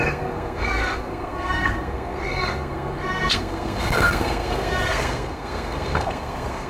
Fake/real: fake